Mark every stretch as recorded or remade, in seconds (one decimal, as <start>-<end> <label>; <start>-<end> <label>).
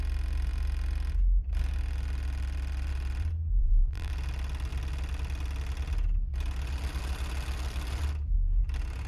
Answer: 0.0-3.6 recorded; 3.6-4.1 remade; 4.1-9.1 recorded